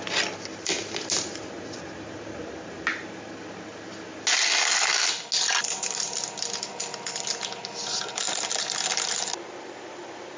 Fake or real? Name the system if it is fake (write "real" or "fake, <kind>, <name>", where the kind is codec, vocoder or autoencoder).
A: real